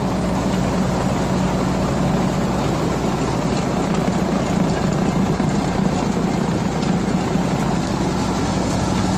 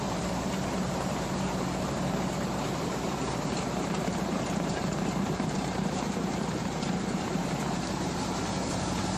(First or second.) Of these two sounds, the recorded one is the first